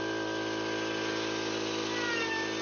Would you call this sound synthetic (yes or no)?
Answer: no